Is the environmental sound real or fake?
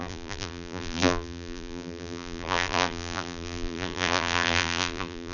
fake